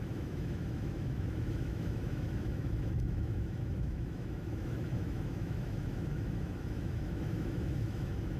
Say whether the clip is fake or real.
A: fake